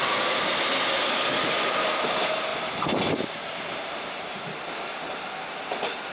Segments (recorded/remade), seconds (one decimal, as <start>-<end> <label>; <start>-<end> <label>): 0.0-6.1 recorded